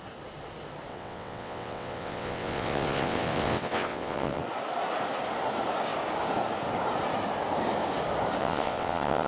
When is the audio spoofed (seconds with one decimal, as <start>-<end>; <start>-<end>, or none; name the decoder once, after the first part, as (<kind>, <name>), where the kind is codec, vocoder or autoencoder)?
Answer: 0.9-4.4 (vocoder, WaveNeXt); 8.4-9.3